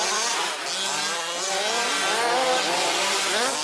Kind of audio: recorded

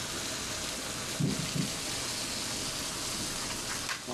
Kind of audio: recorded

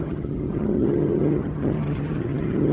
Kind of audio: remade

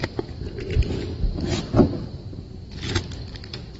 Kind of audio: recorded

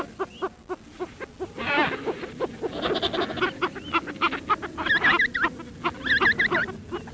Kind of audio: recorded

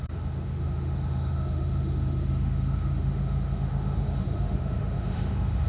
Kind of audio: remade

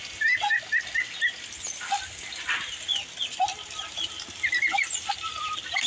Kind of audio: recorded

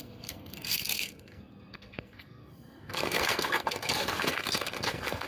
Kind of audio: remade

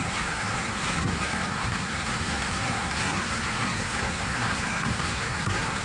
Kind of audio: remade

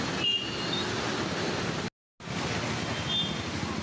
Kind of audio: recorded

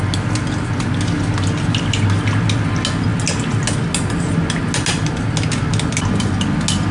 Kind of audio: recorded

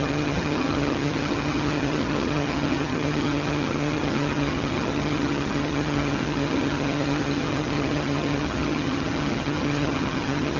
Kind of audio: remade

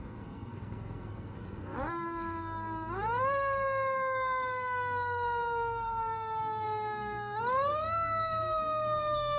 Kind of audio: remade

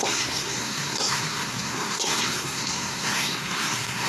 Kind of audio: remade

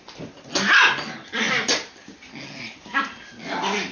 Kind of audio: recorded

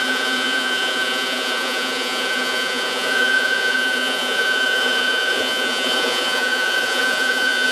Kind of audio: remade